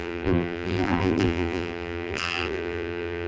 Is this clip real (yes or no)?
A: no